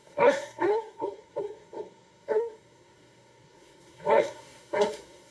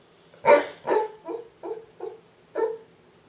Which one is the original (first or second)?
second